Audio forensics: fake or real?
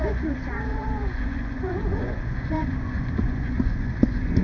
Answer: fake